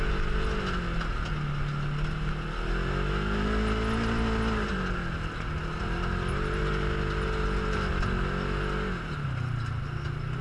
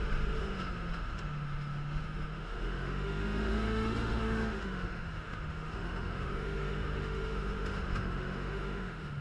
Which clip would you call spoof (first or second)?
second